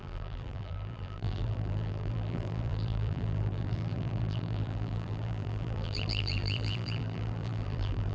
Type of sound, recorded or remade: remade